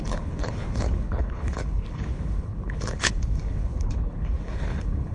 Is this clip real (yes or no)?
no